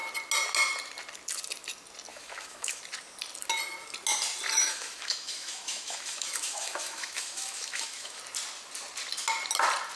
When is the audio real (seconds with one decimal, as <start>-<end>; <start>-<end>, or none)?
0.0-2.1; 2.8-4.6; 8.2-10.0